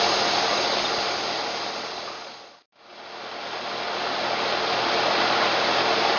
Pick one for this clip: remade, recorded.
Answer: recorded